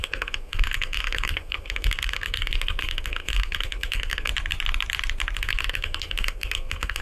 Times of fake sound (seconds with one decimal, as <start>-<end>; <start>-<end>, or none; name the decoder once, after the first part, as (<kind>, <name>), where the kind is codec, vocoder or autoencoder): 0.0-4.3 (codec, SNAC); 5.4-7.0